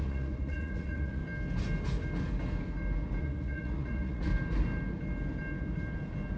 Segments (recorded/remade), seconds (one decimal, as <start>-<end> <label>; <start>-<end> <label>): 0.0-1.2 remade; 1.2-3.2 recorded; 3.2-4.3 remade; 4.3-6.4 recorded